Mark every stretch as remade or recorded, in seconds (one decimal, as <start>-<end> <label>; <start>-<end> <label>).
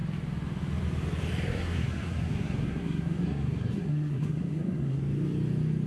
0.0-1.5 recorded; 1.5-5.0 remade; 5.0-5.9 recorded